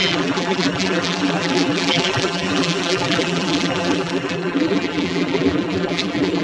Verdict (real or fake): fake